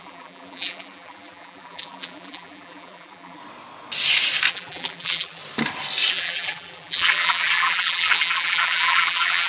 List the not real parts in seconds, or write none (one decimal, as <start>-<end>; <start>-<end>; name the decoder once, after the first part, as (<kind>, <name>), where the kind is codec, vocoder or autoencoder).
0.0-3.4 (vocoder, BigVGAN v2); 4.5-5.4; 6.1-9.5